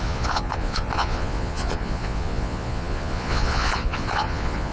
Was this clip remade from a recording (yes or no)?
yes